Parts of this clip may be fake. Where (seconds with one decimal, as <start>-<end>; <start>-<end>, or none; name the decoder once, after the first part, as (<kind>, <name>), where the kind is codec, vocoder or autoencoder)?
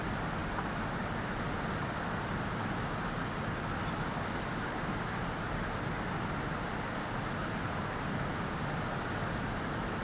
none